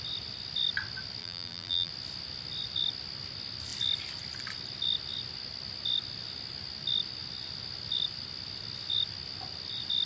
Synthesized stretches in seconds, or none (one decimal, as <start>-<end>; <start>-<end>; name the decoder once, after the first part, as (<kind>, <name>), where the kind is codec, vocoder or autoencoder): 1.2-1.9 (vocoder, BigVGAN v2)